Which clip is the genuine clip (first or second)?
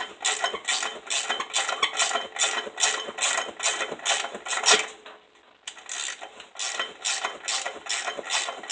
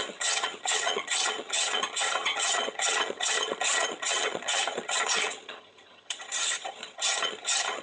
first